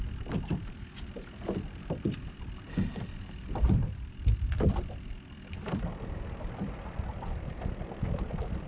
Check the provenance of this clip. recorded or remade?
remade